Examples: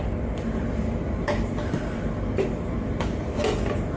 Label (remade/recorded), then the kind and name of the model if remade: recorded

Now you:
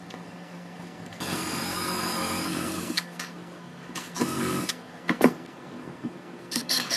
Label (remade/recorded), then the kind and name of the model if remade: remade, codec, SNAC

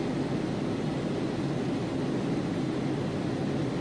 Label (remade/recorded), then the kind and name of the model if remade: recorded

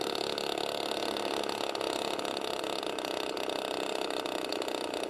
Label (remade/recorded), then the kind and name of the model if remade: recorded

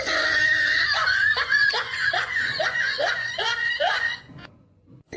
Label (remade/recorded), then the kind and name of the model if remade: remade, vocoder, Vocos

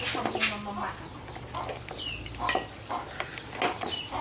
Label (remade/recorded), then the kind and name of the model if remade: recorded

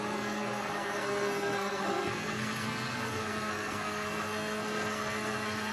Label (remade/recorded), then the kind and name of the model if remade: remade, codec, SNAC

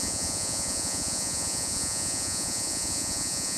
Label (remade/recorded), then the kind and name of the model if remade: remade, vocoder, Vocos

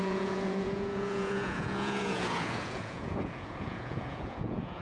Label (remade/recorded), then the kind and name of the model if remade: remade, vocoder, Vocos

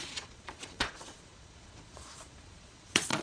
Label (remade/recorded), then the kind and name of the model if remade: remade, vocoder, Vocos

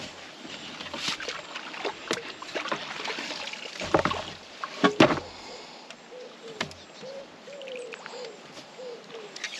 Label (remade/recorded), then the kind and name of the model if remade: recorded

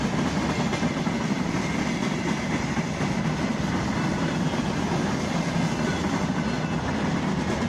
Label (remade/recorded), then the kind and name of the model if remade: recorded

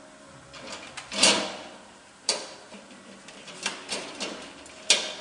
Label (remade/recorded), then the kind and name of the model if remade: recorded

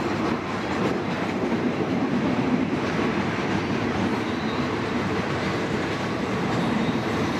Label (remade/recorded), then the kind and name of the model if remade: remade, vocoder, BigVGAN v2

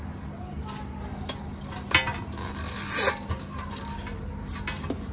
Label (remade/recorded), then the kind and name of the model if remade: recorded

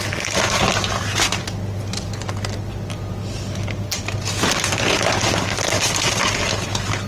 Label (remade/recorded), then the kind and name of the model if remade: recorded